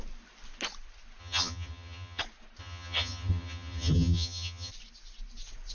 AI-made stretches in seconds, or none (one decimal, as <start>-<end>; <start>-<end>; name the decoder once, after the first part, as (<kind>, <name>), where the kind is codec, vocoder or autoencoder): 1.2-2.2 (vocoder, HiFi-GAN); 2.6-4.7